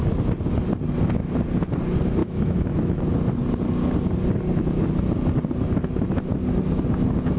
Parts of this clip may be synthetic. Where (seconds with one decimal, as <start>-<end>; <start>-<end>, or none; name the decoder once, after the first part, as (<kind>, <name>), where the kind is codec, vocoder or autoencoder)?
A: 2.2-3.0 (autoencoder, DAC-VAE)